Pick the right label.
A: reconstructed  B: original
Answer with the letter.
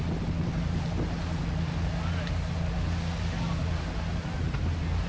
B